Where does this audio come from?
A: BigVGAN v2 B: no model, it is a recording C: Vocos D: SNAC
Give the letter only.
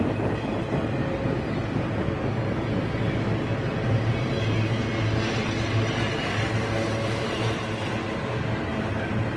B